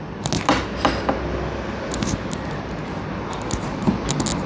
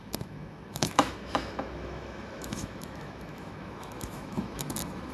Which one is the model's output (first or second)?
second